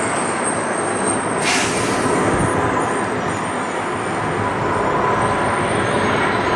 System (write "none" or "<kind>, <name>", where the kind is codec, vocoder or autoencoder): none